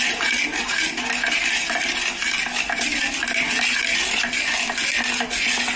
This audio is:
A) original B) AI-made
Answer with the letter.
A